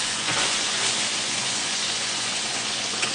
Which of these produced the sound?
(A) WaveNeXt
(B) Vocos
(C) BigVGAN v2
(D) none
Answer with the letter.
B